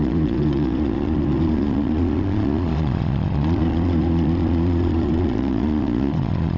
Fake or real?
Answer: fake